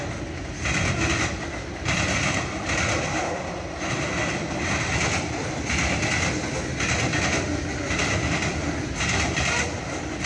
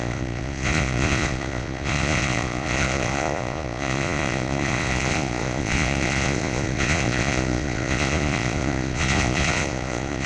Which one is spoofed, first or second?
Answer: second